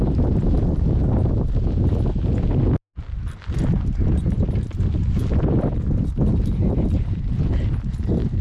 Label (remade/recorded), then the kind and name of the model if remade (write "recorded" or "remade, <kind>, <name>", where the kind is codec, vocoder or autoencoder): recorded